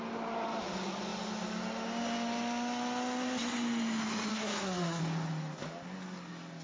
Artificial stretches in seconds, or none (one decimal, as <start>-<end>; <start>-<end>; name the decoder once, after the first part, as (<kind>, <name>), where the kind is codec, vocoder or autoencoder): 4.3-5.0 (codec, SNAC)